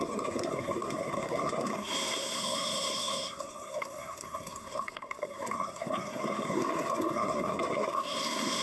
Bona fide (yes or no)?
no